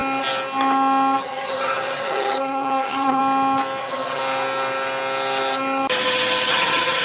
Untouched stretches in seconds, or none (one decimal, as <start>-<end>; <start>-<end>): 0.0-1.2; 3.2-3.8; 4.2-6.5